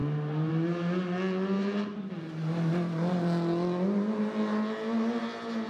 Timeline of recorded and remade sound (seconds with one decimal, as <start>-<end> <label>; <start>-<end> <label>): 0.0-5.7 recorded